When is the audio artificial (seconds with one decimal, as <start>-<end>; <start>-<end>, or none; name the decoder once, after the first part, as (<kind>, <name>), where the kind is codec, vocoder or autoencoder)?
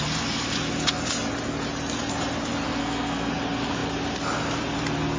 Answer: 2.8-3.3 (codec, SNAC)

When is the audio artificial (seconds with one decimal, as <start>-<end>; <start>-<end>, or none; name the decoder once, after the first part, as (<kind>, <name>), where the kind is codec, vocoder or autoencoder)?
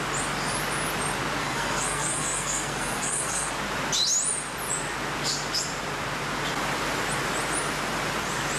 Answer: 1.4-3.5 (codec, SNAC)